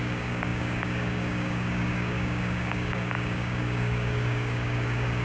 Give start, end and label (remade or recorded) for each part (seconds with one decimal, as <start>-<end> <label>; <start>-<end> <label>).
0.0-5.2 remade